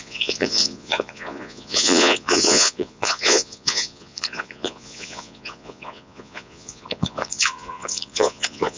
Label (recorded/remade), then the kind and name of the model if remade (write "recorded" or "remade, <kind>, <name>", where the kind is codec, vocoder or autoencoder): remade, vocoder, Vocos